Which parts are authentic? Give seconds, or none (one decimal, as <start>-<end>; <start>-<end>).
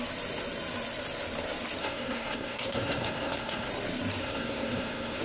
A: 0.0-1.8; 3.7-4.2